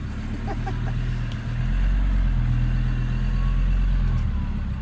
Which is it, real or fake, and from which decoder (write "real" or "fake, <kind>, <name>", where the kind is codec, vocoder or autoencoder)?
real